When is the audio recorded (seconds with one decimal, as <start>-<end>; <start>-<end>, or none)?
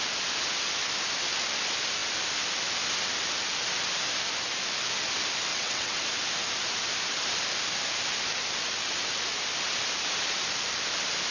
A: 0.0-5.5; 6.0-11.3